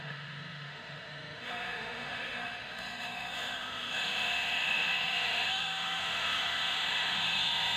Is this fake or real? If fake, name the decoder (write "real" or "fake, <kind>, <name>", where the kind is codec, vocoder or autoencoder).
fake, autoencoder, DAC-VAE